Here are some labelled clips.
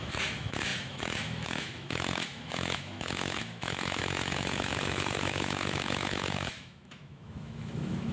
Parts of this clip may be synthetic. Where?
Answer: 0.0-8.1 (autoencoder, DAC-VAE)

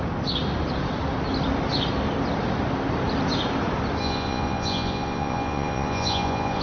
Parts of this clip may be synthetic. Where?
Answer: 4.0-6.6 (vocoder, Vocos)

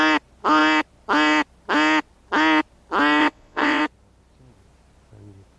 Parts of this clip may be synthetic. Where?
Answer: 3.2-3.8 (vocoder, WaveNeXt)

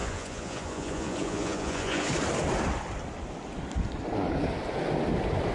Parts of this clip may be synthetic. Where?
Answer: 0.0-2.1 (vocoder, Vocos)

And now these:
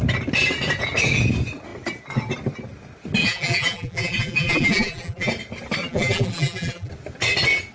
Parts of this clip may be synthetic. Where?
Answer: 3.2-5.3 (vocoder, BigVGAN v2); 5.8-6.9

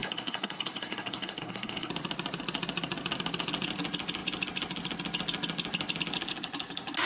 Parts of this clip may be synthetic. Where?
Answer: 0.0-1.9 (codec, SNAC)

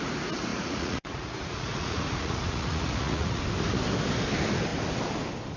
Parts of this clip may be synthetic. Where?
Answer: 0.5-3.4 (vocoder, Vocos)